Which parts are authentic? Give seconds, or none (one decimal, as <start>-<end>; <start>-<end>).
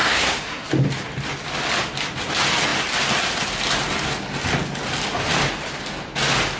0.7-6.6